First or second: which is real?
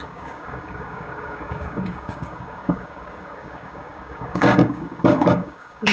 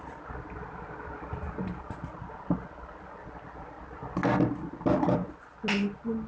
second